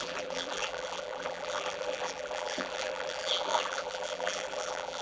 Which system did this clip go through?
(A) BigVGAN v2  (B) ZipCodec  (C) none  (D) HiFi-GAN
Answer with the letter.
A